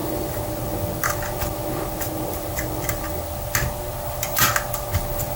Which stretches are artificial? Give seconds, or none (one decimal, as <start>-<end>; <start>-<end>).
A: none